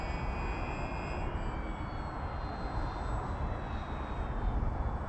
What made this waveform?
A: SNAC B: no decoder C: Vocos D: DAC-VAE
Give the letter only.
B